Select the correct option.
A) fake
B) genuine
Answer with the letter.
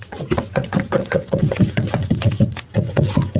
A